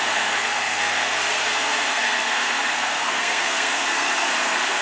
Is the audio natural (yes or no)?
no